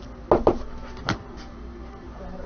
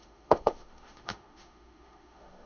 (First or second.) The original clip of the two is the first